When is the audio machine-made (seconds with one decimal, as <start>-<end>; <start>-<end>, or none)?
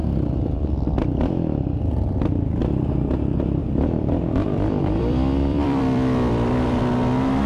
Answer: 3.6-6.8